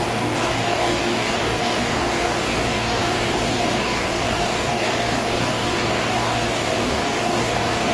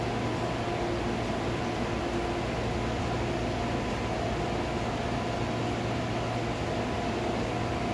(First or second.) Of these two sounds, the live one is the second